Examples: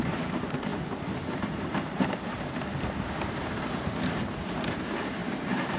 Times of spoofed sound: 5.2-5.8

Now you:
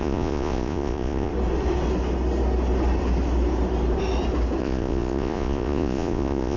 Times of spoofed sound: 0.0-1.3; 4.6-6.6